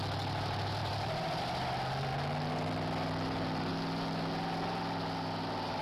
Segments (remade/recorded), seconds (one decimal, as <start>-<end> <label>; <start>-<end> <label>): 0.0-0.8 recorded; 0.8-1.4 remade; 1.4-5.8 recorded